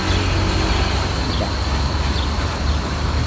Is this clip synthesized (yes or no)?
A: no